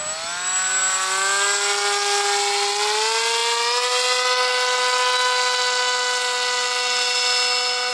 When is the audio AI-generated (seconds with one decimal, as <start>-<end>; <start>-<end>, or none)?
none